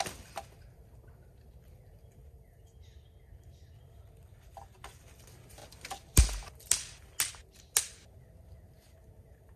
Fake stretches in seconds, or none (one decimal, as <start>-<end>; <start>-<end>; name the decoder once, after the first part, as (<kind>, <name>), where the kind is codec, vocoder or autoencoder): 2.2-5.0 (vocoder, BigVGAN v2)